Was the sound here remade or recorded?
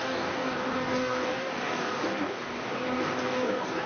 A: remade